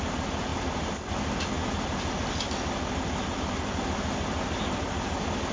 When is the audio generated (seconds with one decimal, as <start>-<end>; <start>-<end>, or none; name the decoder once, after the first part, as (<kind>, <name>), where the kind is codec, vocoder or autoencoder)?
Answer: none